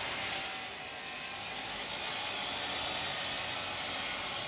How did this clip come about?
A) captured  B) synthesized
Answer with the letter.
A